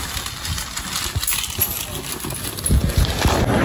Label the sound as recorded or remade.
recorded